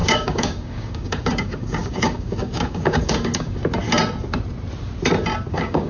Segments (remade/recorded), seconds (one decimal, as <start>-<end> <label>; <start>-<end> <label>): 0.0-3.6 remade; 3.6-5.5 recorded; 5.5-5.9 remade